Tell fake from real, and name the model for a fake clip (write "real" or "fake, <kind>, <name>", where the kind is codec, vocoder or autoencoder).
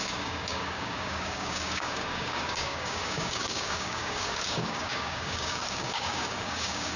fake, codec, DAC